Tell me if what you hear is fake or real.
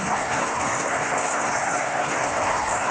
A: fake